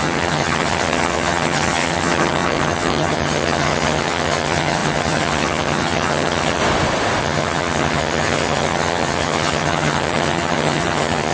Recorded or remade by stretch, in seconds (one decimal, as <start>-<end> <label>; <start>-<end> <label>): 0.0-6.6 remade; 6.6-7.2 recorded; 7.2-11.3 remade